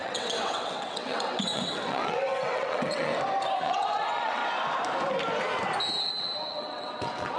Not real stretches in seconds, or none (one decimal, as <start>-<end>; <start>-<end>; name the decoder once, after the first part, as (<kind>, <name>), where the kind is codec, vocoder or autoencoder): 0.0-3.1 (vocoder, WaveNeXt); 3.6-4.4; 6.1-7.4